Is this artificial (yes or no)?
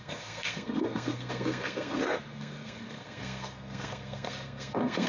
yes